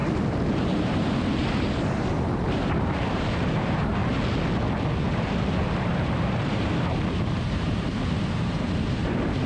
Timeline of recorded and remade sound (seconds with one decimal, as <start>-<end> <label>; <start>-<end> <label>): 0.0-2.8 recorded; 2.8-4.0 remade; 4.0-5.1 recorded; 5.1-9.5 remade